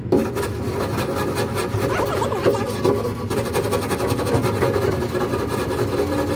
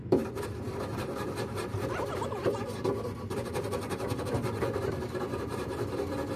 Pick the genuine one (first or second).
first